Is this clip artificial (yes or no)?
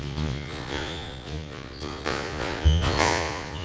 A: yes